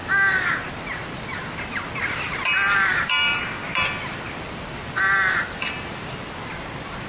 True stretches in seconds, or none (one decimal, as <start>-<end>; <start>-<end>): none